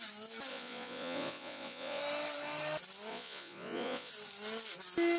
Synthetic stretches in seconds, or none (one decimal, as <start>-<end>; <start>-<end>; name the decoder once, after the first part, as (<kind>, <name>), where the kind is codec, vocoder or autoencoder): 0.5-2.0 (vocoder, Vocos); 3.1-4.1